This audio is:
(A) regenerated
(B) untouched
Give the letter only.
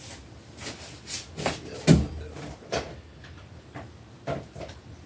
B